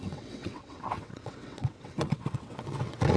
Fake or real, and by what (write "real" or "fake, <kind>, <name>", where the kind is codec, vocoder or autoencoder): fake, vocoder, WaveNeXt